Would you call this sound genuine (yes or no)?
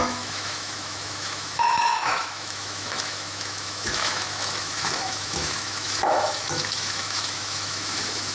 no